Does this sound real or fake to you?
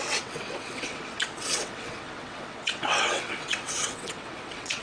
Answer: fake